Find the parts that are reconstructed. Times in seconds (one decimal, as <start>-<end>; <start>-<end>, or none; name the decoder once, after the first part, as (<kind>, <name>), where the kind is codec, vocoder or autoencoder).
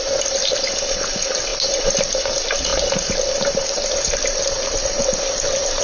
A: none